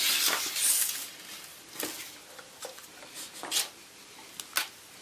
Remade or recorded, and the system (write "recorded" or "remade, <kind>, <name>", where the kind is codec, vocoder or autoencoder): recorded